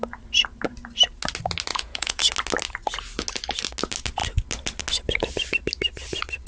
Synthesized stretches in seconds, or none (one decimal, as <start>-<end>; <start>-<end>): 1.7-2.2